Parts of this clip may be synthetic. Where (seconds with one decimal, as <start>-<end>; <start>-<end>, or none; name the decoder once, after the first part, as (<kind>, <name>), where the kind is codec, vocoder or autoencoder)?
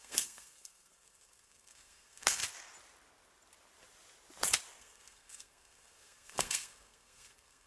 0.0-2.4 (codec, SNAC); 4.8-7.7